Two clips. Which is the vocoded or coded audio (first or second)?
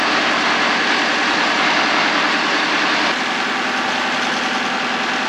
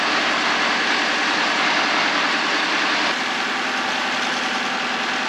second